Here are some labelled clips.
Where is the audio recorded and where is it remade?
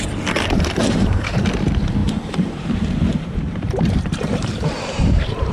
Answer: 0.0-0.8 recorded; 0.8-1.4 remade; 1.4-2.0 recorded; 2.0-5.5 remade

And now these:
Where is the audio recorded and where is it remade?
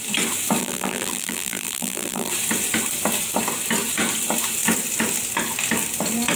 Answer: 0.0-0.6 recorded; 0.6-2.3 remade; 2.3-6.4 recorded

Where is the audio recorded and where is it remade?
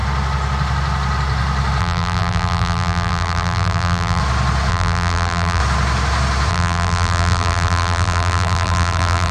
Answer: 0.0-1.8 recorded; 1.8-4.2 remade; 4.2-4.7 recorded; 4.7-5.6 remade; 5.6-6.5 recorded; 6.5-9.3 remade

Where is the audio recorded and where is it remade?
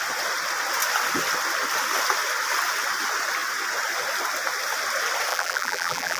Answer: 0.0-5.3 recorded; 5.3-6.2 remade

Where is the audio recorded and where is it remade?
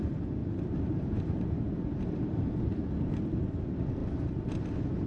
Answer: 0.0-0.4 recorded; 0.4-3.5 remade; 3.5-5.1 recorded